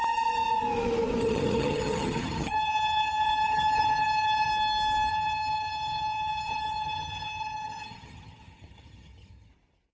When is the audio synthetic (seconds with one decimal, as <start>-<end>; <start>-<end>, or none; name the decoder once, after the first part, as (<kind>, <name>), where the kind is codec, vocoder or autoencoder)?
1.2-4.5 (vocoder, HiFi-GAN); 5.1-9.5